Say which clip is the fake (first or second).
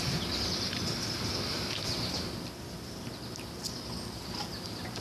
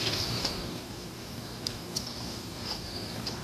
second